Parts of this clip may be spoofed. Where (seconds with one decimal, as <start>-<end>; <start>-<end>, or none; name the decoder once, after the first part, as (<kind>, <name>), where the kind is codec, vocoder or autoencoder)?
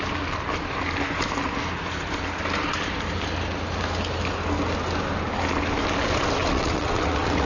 6.4-7.5 (vocoder, WaveNeXt)